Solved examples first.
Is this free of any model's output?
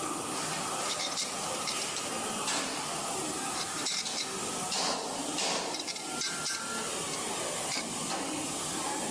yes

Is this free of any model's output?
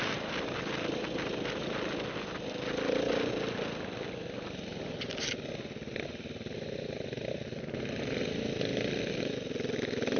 yes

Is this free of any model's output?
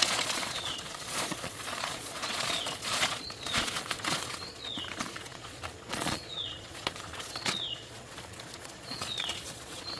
no